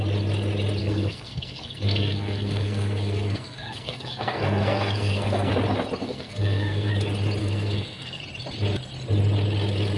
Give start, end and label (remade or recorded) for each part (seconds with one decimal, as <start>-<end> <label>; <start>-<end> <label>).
0.0-0.8 recorded; 0.8-5.5 remade; 5.5-6.0 recorded; 6.0-6.9 remade; 6.9-7.4 recorded; 7.4-8.2 remade; 8.2-10.0 recorded